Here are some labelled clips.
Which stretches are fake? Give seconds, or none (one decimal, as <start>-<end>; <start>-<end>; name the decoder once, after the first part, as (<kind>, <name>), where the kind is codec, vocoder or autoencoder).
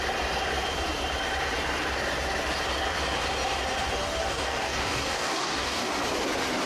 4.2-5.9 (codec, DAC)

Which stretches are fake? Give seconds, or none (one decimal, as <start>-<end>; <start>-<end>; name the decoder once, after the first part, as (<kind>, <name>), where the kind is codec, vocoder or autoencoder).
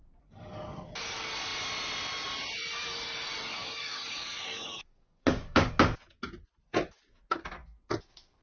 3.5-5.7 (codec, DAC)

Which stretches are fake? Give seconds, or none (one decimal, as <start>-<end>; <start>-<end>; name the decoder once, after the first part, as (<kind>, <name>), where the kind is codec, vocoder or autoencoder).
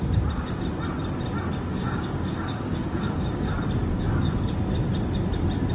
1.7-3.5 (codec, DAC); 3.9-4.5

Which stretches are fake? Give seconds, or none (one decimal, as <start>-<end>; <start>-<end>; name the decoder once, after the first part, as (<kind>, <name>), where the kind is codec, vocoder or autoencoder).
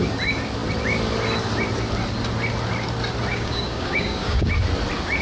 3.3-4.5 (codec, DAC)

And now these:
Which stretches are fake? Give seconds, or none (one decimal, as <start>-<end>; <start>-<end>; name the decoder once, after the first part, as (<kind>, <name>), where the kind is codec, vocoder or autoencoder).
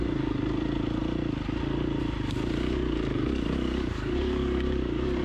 3.1-5.2 (codec, DAC)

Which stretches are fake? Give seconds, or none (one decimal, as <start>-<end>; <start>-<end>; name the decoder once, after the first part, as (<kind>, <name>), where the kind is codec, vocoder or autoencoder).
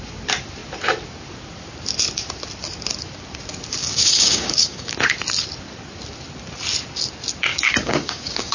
3.8-4.9 (codec, DAC); 7.5-8.5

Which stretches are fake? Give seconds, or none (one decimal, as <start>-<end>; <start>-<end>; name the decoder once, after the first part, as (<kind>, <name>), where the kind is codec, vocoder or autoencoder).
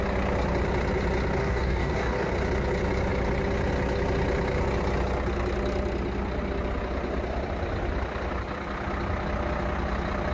1.4-2.3 (codec, DAC)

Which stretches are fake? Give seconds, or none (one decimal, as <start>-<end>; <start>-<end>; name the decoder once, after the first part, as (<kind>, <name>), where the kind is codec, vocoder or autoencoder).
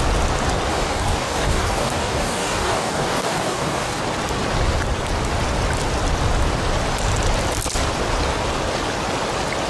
0.7-4.0 (codec, DAC)